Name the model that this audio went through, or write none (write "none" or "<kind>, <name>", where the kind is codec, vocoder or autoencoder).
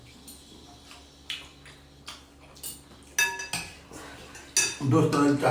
none